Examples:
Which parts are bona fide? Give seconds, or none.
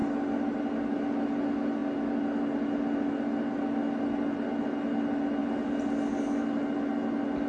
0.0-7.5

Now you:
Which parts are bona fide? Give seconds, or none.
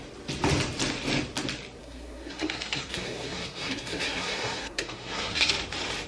0.0-1.8; 5.5-6.1